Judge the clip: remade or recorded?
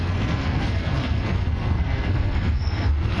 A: remade